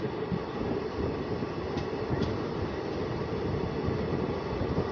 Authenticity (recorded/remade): recorded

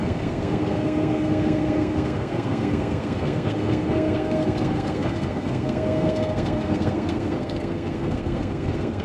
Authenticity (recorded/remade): remade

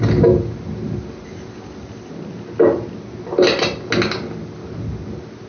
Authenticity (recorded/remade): recorded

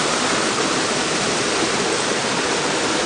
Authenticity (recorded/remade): remade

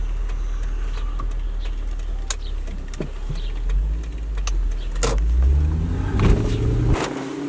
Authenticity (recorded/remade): recorded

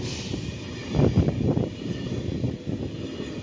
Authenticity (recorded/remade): recorded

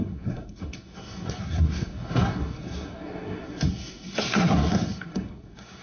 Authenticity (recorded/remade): remade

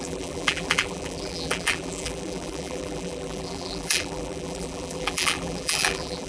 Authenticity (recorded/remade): remade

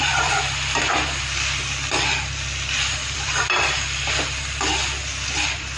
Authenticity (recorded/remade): remade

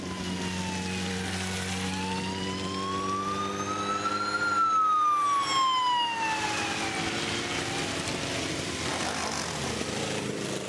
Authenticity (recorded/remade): recorded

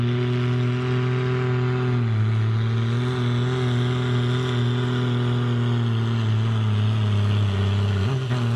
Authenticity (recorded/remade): recorded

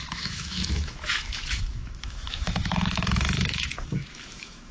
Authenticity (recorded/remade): remade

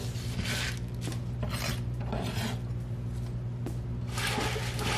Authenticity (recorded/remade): recorded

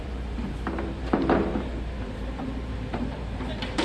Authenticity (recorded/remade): remade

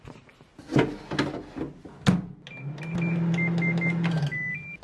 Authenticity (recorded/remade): recorded